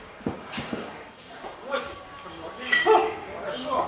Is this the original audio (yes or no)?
no